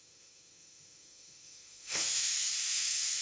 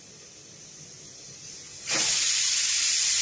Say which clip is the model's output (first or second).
first